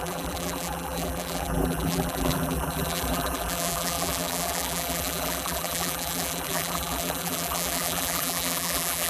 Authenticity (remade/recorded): remade